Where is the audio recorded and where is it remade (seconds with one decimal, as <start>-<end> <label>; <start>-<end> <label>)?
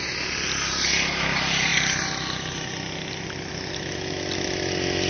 0.0-5.1 recorded